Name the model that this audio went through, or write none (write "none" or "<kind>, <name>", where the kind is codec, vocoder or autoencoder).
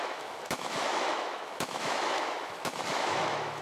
autoencoder, DAC-VAE